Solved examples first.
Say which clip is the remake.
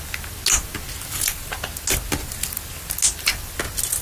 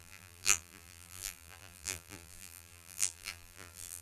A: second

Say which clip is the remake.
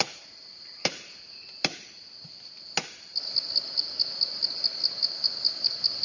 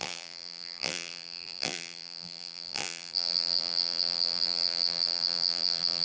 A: second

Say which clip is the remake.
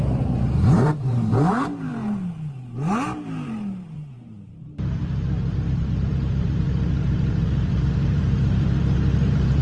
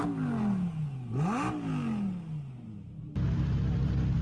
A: first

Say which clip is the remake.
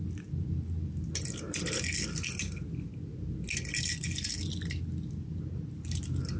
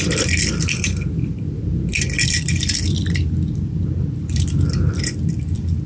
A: second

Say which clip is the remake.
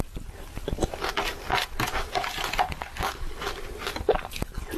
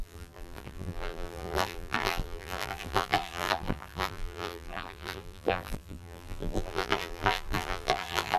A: second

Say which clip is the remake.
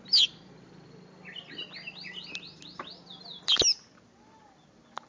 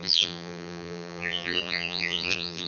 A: second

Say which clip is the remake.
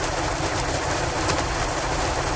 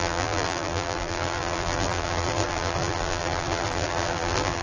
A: second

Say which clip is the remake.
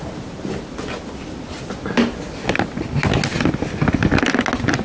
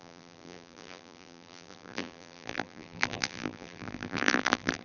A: second